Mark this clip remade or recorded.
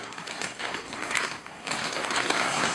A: remade